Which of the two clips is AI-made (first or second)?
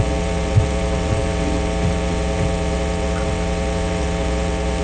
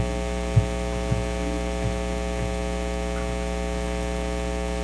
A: first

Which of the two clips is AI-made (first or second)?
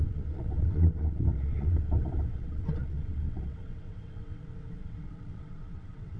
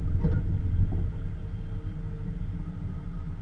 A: first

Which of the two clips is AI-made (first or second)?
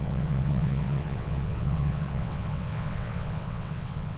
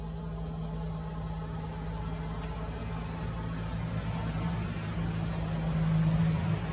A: first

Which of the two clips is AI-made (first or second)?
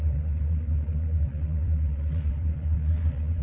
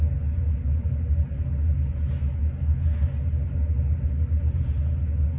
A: first